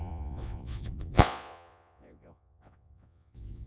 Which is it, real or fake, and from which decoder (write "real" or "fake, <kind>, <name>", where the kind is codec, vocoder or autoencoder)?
fake, vocoder, Vocos